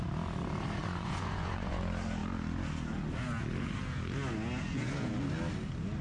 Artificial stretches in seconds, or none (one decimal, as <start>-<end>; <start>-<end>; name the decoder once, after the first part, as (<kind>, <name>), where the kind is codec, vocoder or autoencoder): 0.8-1.8 (vocoder, Vocos)